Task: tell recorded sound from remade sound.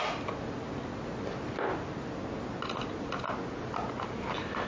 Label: recorded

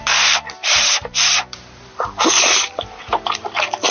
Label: remade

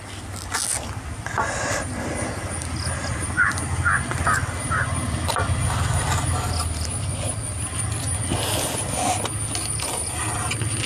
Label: recorded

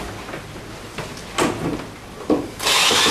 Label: recorded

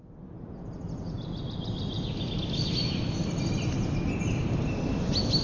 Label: recorded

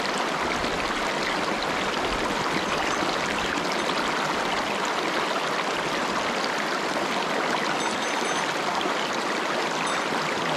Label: recorded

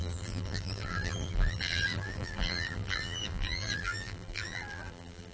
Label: remade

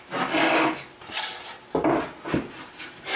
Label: recorded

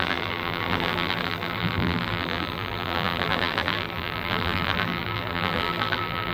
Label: remade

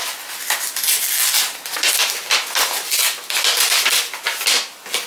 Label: recorded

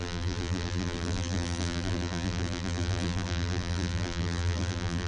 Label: remade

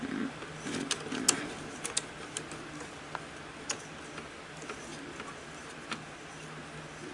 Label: recorded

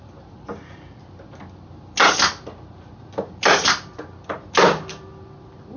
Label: recorded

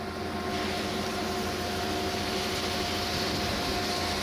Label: recorded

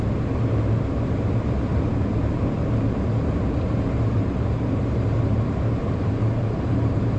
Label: remade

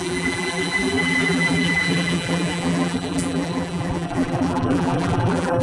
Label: remade